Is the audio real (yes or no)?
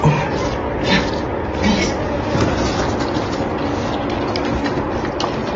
yes